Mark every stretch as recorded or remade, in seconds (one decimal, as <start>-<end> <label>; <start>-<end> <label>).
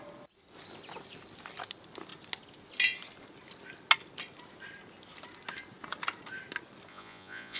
0.0-6.9 recorded; 6.9-7.6 remade